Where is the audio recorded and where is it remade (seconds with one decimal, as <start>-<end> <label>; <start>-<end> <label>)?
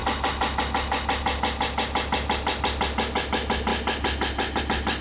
0.0-5.0 recorded